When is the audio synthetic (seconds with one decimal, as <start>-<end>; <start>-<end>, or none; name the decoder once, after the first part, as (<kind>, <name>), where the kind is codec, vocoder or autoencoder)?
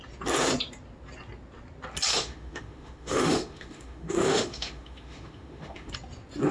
2.1-5.9 (autoencoder, DAC-VAE)